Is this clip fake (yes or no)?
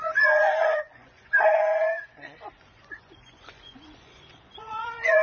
yes